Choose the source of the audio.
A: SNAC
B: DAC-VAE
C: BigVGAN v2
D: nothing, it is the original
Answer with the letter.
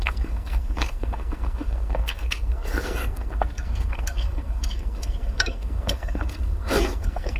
A